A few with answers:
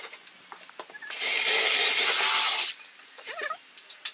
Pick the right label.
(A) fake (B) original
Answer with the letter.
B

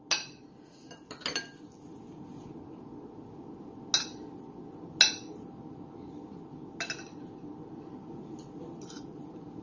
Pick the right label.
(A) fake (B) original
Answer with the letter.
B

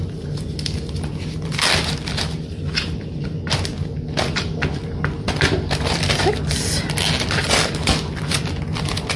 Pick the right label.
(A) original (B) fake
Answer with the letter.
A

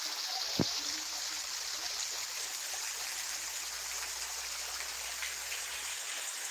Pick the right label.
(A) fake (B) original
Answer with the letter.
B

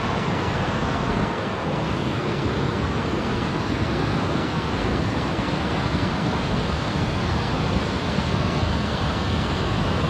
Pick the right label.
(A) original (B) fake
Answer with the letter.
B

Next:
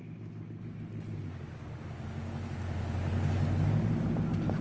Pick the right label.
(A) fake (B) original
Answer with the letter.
B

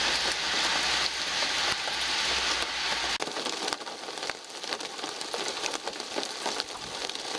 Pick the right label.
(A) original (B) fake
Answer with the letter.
A